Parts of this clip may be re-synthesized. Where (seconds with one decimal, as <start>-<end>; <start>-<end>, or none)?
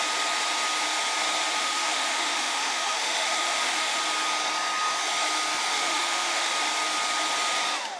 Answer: 1.6-4.0; 5.7-6.5